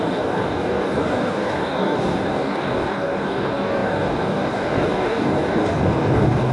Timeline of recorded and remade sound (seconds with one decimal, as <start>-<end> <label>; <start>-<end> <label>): 0.0-6.5 remade